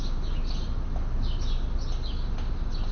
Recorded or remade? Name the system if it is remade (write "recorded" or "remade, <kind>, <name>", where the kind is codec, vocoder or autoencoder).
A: recorded